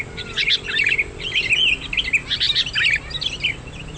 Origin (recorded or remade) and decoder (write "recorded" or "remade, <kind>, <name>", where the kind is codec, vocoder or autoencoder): recorded